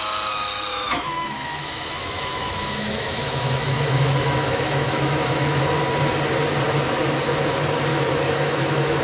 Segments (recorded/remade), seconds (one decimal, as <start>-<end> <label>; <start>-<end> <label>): 0.0-0.7 recorded; 0.7-5.6 remade; 5.6-7.9 recorded; 7.9-9.0 remade